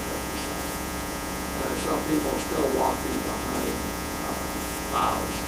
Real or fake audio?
fake